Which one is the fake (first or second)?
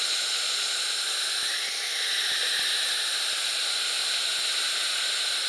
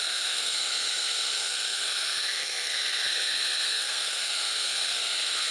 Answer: second